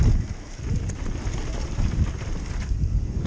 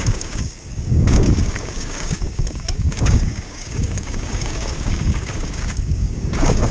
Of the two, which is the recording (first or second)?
first